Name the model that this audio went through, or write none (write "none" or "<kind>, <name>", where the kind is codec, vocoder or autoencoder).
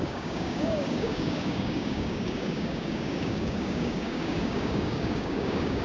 codec, DAC